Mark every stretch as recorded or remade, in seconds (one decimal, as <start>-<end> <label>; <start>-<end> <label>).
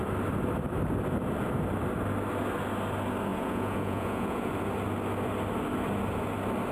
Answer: 0.0-3.3 recorded; 3.3-4.5 remade; 4.5-6.7 recorded